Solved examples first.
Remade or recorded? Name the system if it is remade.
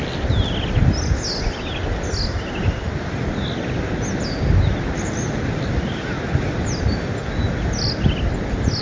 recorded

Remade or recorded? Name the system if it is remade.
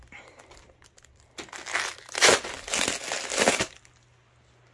recorded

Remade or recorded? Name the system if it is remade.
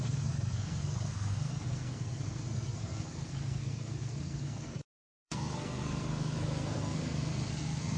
remade, codec, SNAC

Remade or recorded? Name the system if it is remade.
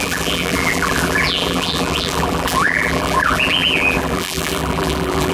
remade, vocoder, BigVGAN v2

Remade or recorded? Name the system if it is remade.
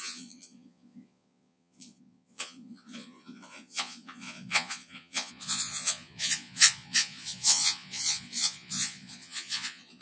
remade, vocoder, Vocos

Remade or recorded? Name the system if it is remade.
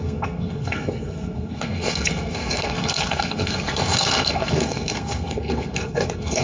remade, codec, SNAC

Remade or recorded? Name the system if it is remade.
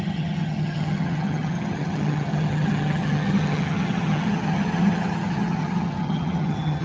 remade, vocoder, HiFi-GAN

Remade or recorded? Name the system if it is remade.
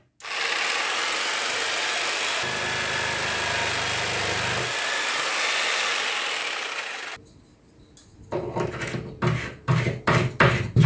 recorded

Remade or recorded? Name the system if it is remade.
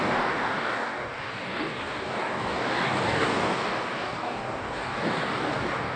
remade, codec, DAC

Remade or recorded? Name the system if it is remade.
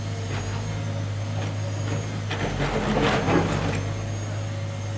recorded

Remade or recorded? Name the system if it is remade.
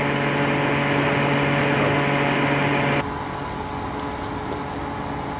recorded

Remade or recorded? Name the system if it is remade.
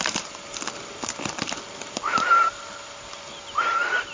remade, vocoder, BigVGAN v2